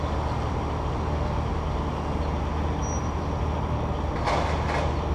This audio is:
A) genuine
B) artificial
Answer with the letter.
A